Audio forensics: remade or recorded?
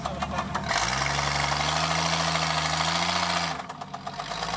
recorded